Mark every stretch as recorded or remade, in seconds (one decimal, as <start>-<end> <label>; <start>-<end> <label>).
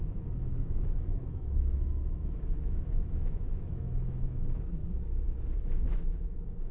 0.0-4.8 remade; 4.8-5.6 recorded; 5.6-6.7 remade